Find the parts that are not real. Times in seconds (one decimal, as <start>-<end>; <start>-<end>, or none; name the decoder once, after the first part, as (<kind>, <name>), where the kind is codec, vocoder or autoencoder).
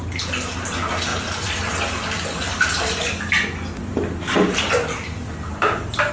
1.1-2.5 (vocoder, BigVGAN v2)